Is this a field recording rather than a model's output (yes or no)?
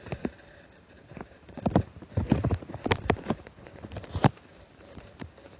no